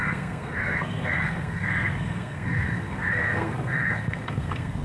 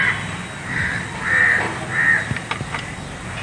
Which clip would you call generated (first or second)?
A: first